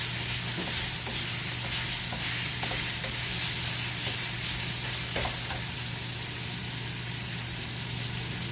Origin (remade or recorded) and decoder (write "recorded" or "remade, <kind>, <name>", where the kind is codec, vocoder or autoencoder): recorded